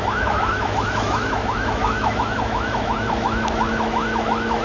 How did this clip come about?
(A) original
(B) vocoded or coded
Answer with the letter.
B